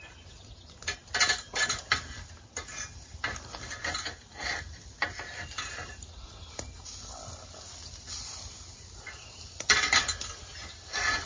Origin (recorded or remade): recorded